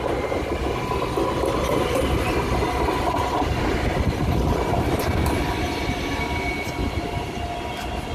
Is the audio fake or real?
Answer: real